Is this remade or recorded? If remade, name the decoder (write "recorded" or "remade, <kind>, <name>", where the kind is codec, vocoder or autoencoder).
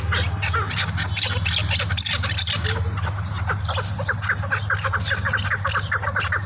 recorded